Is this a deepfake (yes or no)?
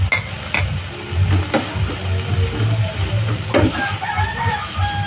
no